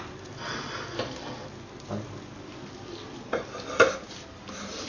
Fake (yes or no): no